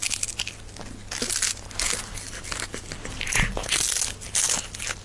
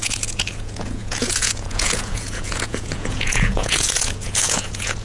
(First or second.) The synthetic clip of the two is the second